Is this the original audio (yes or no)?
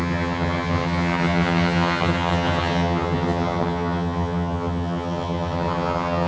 no